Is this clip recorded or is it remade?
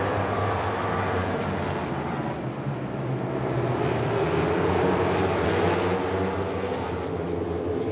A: recorded